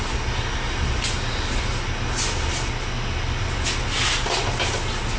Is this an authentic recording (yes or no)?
yes